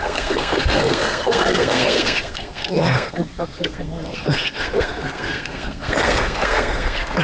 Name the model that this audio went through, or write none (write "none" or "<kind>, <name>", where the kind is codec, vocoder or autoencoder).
codec, SNAC